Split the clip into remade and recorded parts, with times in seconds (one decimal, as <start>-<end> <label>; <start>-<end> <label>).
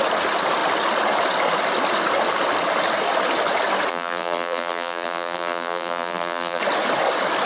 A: 0.0-3.9 recorded; 3.9-6.6 remade; 6.6-7.5 recorded